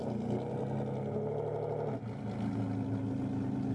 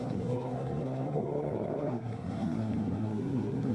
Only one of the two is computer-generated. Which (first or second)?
second